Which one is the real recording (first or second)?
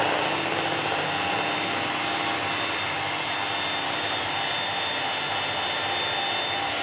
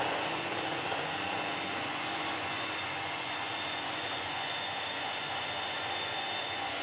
first